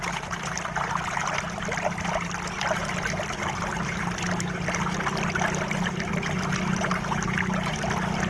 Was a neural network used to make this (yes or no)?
no